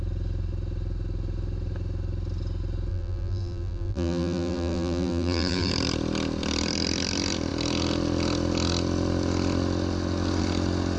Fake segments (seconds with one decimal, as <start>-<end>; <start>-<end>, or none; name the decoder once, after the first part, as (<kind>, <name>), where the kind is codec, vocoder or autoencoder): 2.9-5.7 (vocoder, BigVGAN v2)